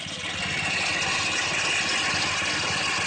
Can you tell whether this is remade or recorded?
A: recorded